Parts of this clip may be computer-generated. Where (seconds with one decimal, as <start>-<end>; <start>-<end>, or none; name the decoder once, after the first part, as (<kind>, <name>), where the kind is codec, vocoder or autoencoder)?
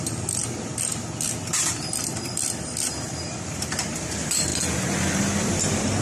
0.0-0.4 (vocoder, BigVGAN v2); 2.1-4.5; 5.2-6.0